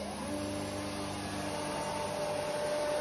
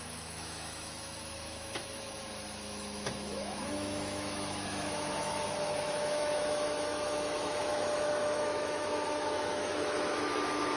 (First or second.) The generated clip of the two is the second